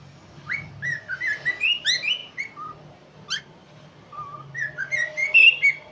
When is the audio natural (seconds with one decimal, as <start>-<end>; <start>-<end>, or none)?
0.0-5.9